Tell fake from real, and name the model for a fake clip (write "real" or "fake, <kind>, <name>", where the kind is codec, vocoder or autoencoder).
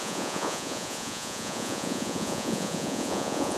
fake, vocoder, Vocos